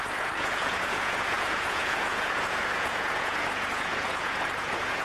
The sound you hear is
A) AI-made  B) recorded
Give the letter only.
A